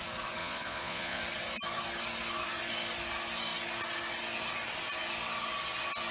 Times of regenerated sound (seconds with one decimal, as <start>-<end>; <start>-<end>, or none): 0.4-1.2